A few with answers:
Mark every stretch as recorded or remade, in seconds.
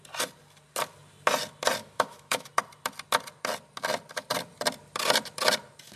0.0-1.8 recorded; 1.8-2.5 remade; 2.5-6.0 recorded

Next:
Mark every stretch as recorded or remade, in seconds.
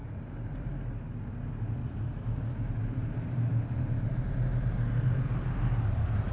0.0-0.7 remade; 0.7-6.3 recorded